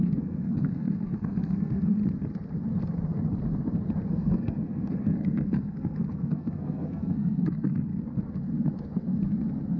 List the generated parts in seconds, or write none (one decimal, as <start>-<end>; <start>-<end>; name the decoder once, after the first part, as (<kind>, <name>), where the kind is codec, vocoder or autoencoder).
0.0-2.0 (codec, SNAC); 4.1-7.9